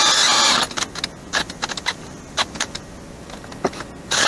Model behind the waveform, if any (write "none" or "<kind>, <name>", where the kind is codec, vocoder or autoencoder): none